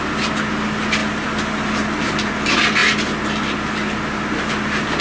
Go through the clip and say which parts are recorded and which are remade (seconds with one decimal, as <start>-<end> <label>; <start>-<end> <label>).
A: 0.0-5.0 recorded